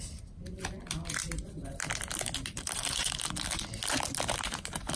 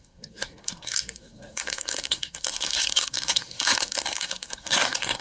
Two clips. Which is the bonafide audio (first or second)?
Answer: first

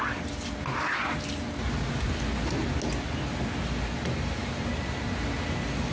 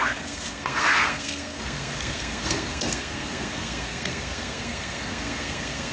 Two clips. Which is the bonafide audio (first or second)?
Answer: first